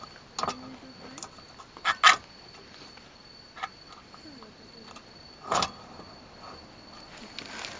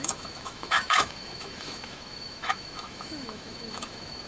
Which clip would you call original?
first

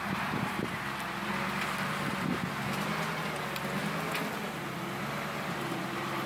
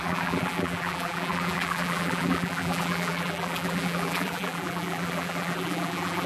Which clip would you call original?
first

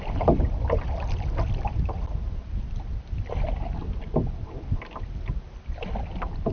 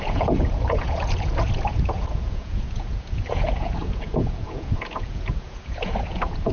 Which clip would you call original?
first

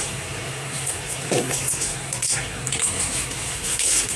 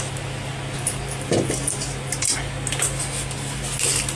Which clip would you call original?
second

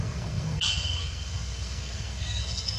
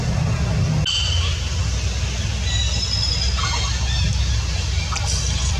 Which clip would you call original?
second